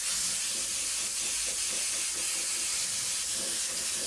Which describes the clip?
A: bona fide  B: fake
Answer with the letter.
A